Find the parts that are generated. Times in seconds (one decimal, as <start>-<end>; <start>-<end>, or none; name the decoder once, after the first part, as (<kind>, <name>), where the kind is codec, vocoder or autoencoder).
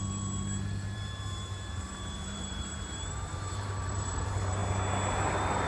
0.0-4.6 (vocoder, BigVGAN v2); 5.3-5.7